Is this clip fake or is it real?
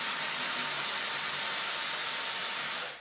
real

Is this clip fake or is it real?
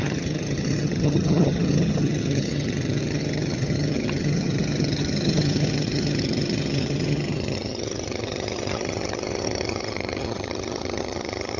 fake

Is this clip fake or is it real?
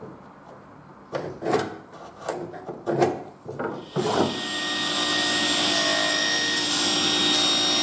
real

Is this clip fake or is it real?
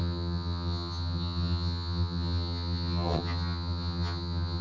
fake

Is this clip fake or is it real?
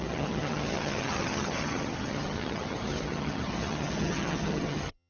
fake